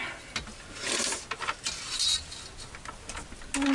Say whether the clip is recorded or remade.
recorded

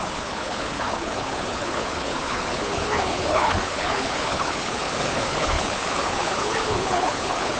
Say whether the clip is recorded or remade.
remade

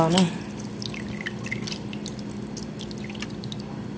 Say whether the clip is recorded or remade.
recorded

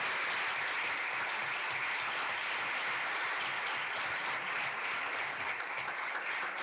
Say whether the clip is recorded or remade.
recorded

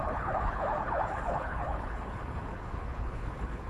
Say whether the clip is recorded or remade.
remade